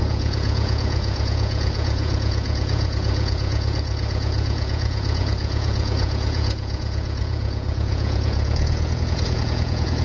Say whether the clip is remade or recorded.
remade